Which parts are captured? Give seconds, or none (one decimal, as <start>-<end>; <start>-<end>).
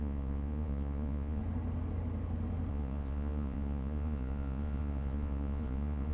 1.4-2.7